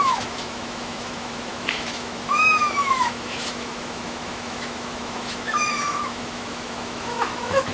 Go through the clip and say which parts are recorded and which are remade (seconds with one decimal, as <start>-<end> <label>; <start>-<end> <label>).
0.0-7.7 remade